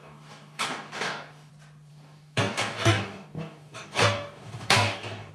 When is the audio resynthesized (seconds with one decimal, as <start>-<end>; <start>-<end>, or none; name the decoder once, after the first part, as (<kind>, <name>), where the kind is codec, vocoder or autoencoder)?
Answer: 0.0-1.5 (codec, DAC); 1.9-5.3